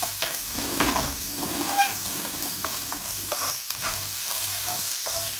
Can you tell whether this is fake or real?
fake